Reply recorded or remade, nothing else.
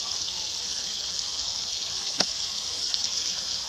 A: remade